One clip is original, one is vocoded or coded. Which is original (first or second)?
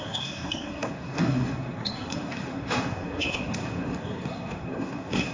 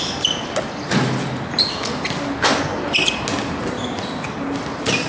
second